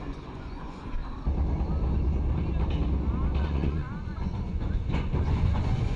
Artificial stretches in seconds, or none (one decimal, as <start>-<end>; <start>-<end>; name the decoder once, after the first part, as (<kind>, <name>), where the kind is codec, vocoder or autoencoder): 0.0-1.0 (vocoder, Vocos); 3.4-6.0